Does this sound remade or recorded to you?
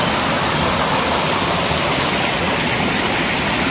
recorded